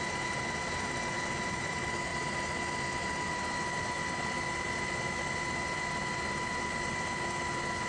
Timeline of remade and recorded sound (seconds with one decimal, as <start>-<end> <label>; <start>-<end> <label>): 0.0-7.9 recorded